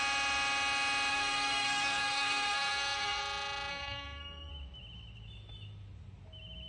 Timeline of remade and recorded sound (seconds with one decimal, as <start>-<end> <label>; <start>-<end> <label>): 0.0-1.1 recorded; 1.1-3.2 remade; 3.2-3.7 recorded; 3.7-4.5 remade; 4.5-6.7 recorded